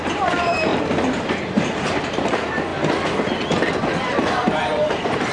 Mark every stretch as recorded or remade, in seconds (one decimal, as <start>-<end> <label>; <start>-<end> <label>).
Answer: 0.0-0.7 remade; 0.7-1.5 recorded; 1.5-2.7 remade; 2.7-4.3 recorded; 4.3-5.3 remade